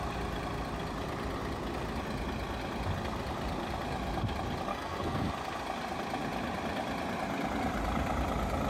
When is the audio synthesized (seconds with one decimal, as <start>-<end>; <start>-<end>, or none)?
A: 4.7-5.3

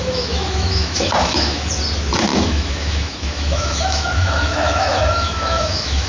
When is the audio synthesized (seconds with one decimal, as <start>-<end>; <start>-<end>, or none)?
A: 0.0-1.7; 2.3-6.1

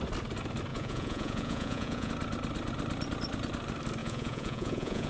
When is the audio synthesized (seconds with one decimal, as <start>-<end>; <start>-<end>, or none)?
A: 0.7-2.1; 4.0-5.1

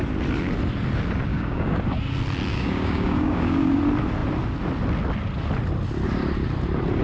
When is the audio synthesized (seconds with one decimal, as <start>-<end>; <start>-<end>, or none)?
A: 1.3-1.8; 2.5-3.8

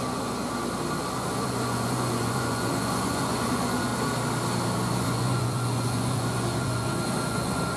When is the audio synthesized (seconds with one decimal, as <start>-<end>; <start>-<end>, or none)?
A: 0.0-0.4; 1.0-3.9; 4.8-7.8

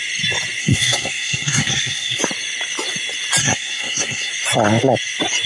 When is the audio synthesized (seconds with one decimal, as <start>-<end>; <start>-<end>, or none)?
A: 0.6-2.2; 3.4-4.3